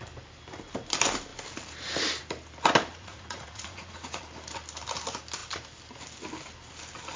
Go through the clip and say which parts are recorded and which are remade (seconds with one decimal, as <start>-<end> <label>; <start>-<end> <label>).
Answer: 0.0-2.9 recorded; 2.9-4.2 remade; 4.2-7.2 recorded